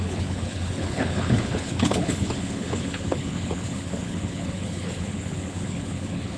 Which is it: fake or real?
fake